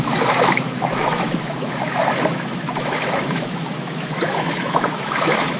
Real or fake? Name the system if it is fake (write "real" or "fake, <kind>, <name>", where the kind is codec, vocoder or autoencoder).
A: fake, autoencoder, DAC-VAE